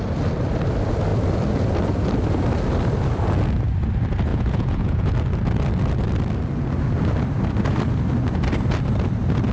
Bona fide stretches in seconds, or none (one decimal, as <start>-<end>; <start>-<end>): 0.0-4.3; 5.1-9.5